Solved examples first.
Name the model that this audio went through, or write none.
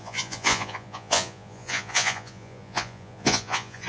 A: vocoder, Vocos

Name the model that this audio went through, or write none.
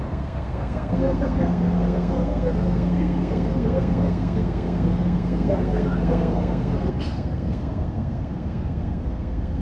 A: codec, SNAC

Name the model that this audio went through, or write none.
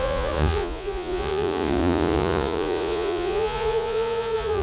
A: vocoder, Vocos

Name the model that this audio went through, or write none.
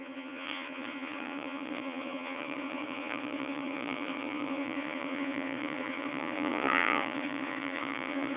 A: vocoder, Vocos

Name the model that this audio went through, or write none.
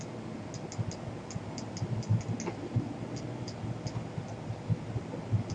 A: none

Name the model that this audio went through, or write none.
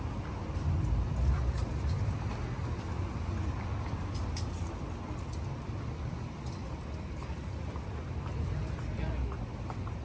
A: none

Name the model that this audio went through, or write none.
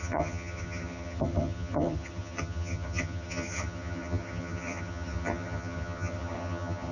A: vocoder, HiFi-GAN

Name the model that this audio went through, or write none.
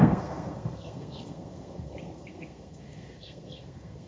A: codec, SNAC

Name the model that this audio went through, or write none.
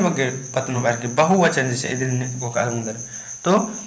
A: vocoder, Vocos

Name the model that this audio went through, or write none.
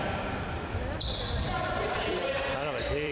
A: vocoder, BigVGAN v2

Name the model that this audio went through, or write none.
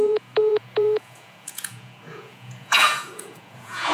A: vocoder, Vocos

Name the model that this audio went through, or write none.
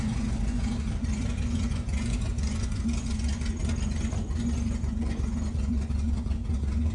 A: vocoder, Vocos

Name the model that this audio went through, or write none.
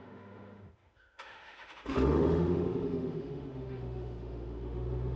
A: autoencoder, DAC-VAE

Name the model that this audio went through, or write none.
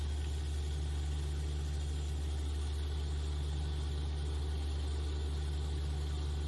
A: none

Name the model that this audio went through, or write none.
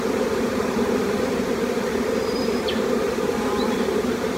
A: vocoder, BigVGAN v2